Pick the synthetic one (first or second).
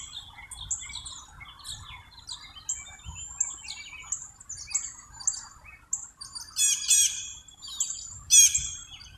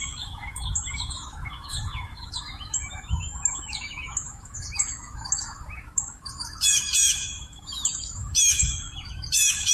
second